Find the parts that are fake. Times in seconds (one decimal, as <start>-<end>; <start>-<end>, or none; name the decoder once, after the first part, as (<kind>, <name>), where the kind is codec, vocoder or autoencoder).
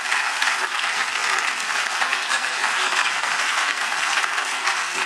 0.0-5.1 (codec, SNAC)